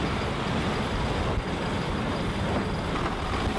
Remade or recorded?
recorded